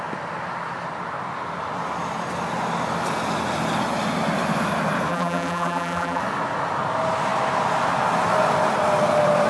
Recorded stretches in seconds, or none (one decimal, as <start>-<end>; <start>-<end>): 0.0-5.1; 6.2-9.5